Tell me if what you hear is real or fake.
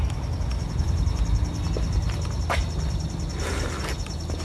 real